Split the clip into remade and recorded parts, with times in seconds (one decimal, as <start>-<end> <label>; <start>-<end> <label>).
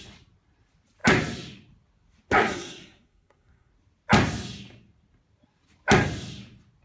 0.0-2.4 recorded; 2.4-3.7 remade; 3.7-6.8 recorded